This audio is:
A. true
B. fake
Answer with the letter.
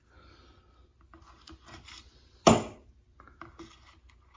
A